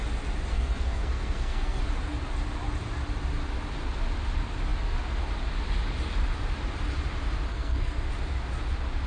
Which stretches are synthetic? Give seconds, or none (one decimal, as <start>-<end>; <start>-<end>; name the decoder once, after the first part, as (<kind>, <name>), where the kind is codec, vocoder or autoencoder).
0.5-1.8 (codec, SNAC); 7.5-8.1